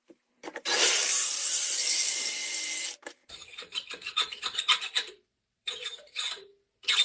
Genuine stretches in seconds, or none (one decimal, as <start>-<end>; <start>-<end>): 1.0-1.9; 6.5-7.0

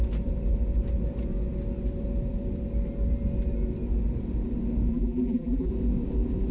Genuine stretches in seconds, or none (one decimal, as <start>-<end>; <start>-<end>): 0.0-4.9; 5.7-6.5

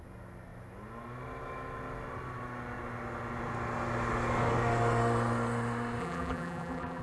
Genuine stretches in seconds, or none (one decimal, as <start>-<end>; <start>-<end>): 0.0-6.0